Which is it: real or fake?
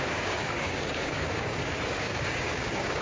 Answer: fake